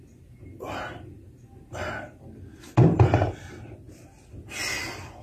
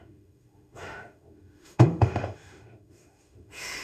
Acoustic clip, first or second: first